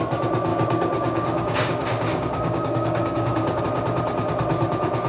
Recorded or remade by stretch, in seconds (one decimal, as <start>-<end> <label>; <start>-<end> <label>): 0.0-0.5 recorded; 0.5-3.6 remade; 3.6-5.1 recorded